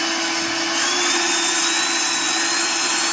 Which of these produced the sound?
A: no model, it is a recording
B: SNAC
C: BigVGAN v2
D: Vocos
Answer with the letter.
A